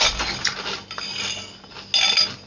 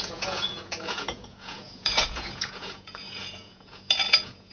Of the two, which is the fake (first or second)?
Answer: second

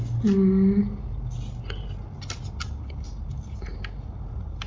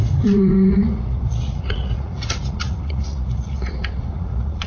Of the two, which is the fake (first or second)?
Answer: second